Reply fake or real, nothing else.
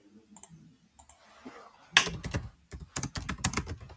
real